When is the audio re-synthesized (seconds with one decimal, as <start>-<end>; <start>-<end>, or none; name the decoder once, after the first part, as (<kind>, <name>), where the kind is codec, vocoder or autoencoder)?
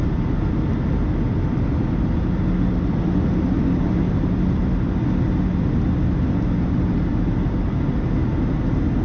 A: none